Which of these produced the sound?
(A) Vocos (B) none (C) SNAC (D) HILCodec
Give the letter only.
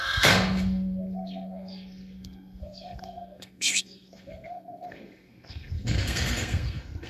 C